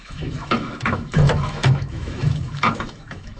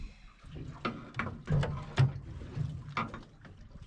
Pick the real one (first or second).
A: second